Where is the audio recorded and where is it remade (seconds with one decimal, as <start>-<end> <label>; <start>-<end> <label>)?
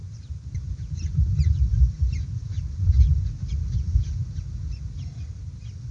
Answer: 0.0-5.9 recorded